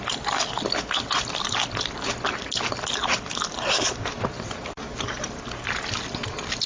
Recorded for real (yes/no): yes